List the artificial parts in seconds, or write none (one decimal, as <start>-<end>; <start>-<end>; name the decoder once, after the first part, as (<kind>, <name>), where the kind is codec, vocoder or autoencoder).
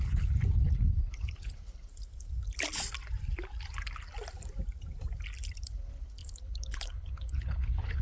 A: 0.0-1.9 (codec, HILCodec); 5.5-8.0